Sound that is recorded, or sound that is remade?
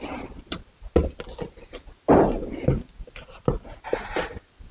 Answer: recorded